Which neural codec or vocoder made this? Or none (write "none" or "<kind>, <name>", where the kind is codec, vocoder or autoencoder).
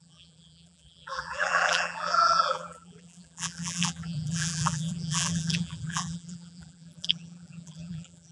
vocoder, BigVGAN v2